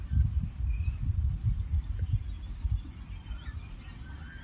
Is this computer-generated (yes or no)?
no